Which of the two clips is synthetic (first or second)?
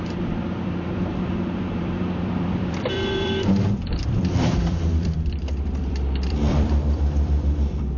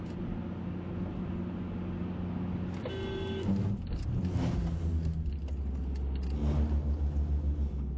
first